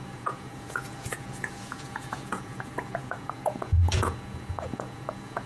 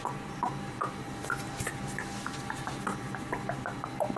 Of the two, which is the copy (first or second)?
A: first